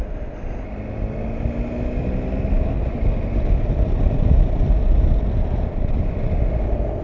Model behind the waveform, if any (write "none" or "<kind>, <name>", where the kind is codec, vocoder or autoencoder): none